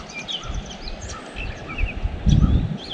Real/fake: real